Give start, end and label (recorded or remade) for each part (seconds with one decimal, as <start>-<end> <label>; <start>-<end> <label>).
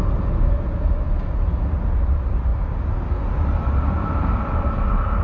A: 0.0-5.2 recorded